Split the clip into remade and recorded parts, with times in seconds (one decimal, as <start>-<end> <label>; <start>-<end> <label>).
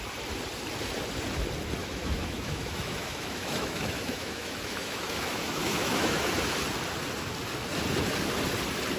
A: 0.0-1.8 recorded; 1.8-6.3 remade; 6.3-9.0 recorded